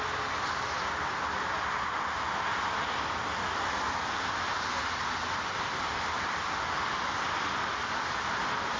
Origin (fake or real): real